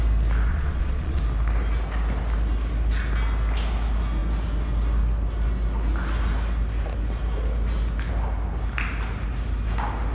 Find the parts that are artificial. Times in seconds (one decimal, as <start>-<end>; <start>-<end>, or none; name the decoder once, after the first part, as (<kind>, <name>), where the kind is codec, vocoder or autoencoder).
0.5-1.2 (vocoder, Vocos)

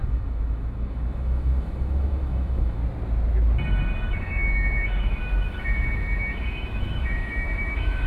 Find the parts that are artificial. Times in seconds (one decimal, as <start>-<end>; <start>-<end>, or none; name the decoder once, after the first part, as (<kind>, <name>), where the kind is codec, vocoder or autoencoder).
0.0-2.8 (autoencoder, DAC-VAE); 4.1-8.1